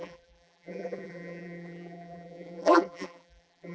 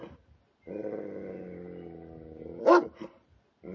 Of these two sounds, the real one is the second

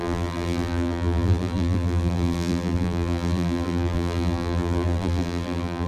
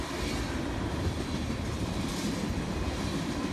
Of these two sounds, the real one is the second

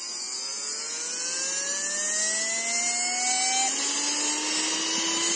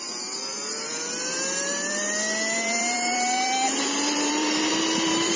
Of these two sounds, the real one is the first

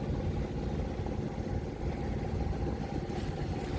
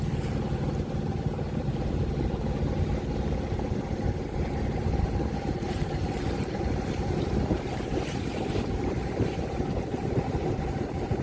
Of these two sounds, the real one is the first